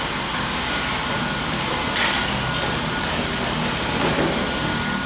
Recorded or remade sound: recorded